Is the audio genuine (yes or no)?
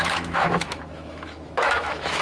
no